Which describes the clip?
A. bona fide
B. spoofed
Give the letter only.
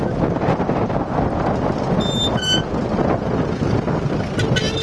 A